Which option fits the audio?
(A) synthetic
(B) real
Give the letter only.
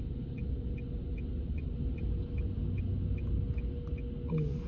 B